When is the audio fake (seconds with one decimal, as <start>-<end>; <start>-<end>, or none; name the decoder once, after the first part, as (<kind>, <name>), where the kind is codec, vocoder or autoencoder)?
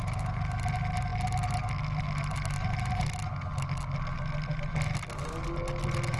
none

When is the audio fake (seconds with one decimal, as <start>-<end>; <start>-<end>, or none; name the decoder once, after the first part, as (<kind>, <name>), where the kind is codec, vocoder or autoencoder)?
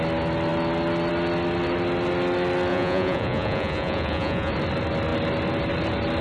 2.7-4.5 (vocoder, Vocos)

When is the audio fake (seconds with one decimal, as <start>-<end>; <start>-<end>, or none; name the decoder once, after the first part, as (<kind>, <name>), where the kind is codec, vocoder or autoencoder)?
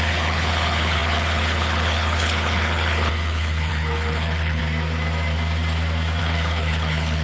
0.0-4.6 (codec, HILCodec); 6.2-7.2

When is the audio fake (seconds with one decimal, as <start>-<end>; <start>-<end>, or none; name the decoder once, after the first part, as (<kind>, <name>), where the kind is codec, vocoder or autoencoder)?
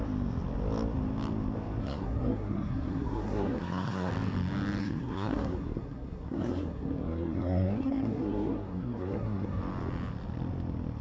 1.8-4.1 (codec, SNAC); 4.8-9.6